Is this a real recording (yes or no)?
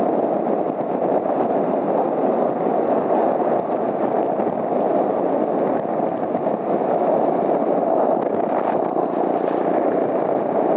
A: yes